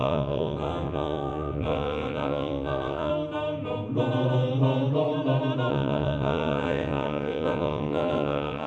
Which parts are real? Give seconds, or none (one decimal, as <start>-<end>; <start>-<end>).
3.1-5.7